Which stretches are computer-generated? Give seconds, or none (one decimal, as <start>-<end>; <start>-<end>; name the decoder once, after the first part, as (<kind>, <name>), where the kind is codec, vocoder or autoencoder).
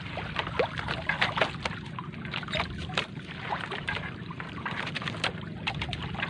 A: 2.8-5.3 (vocoder, BigVGAN v2)